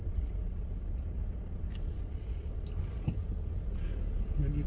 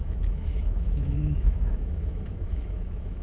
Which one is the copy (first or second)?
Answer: second